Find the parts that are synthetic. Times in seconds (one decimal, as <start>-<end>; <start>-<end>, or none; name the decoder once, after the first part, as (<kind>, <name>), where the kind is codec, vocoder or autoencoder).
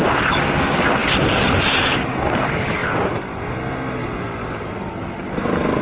none